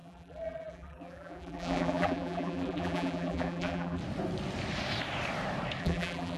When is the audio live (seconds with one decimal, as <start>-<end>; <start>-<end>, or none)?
4.0-5.8